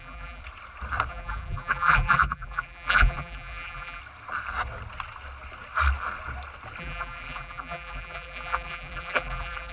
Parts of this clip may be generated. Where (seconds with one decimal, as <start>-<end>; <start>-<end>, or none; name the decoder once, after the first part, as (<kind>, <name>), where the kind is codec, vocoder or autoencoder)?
0.0-0.4 (vocoder, BigVGAN v2); 1.1-4.0; 6.8-9.7